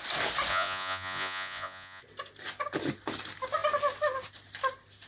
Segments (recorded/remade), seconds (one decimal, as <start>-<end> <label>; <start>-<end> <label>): 0.0-0.5 recorded; 0.5-2.0 remade; 2.0-5.1 recorded